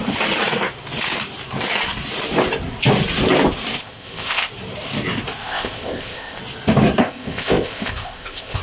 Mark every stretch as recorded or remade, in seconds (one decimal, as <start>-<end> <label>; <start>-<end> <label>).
0.0-3.8 recorded; 3.8-4.5 remade; 4.5-5.4 recorded; 5.4-6.4 remade; 6.4-7.0 recorded; 7.0-8.6 remade